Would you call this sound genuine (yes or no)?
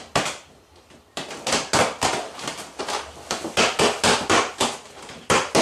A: yes